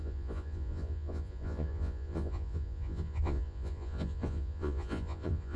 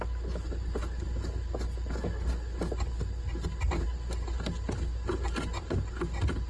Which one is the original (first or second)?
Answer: second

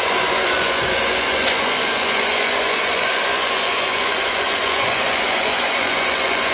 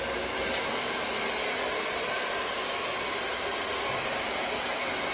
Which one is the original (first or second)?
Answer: second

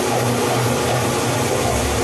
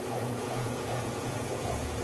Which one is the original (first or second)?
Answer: first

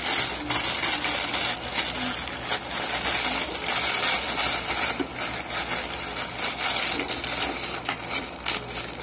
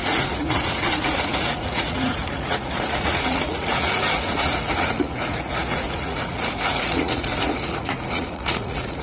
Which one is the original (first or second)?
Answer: first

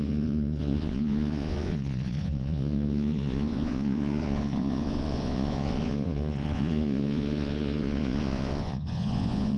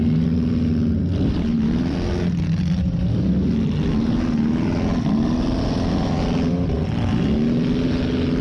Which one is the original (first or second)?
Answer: second